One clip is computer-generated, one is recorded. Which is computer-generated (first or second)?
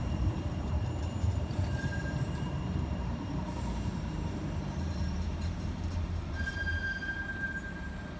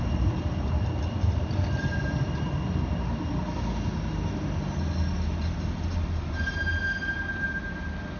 first